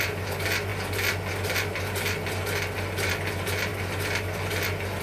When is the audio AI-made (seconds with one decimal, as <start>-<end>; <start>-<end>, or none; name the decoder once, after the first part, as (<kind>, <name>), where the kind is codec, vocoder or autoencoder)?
none